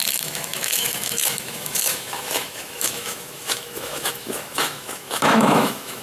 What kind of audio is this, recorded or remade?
remade